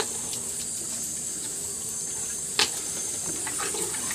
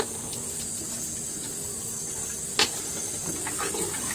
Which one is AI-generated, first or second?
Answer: first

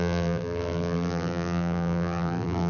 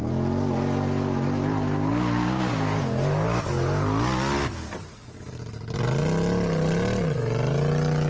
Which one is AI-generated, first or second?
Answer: first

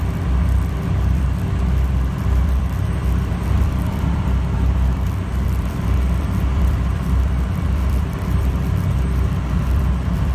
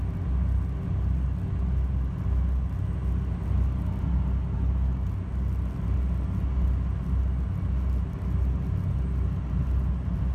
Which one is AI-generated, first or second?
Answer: first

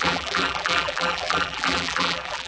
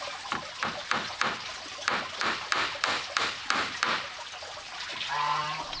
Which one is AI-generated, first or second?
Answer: first